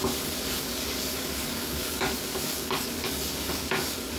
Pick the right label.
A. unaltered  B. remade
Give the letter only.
B